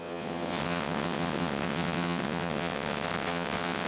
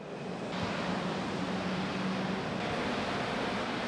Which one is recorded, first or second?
second